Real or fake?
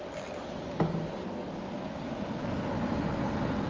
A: real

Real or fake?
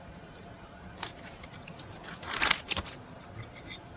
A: real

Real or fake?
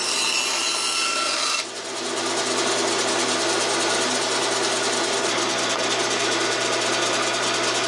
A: real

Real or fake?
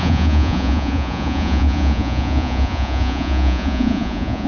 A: fake